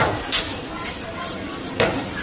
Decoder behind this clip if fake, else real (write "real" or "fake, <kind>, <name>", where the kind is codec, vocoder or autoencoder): real